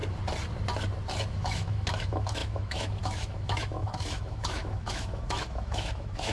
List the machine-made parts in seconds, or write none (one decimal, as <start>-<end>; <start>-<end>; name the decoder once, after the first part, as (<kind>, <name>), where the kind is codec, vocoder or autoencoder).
1.3-6.3 (autoencoder, DAC-VAE)